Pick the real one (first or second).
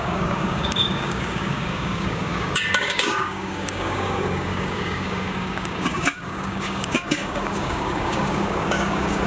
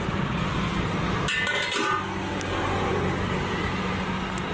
second